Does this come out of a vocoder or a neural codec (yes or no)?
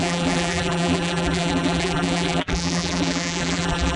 yes